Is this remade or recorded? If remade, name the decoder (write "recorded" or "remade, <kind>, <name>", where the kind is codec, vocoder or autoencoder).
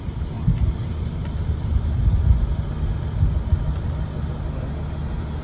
recorded